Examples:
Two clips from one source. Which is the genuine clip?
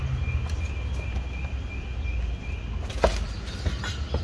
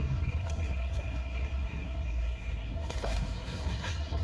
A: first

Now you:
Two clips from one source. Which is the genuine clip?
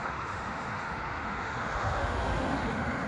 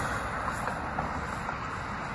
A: second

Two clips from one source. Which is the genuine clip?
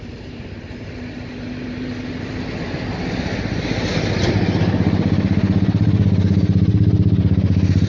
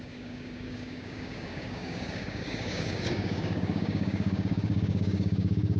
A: first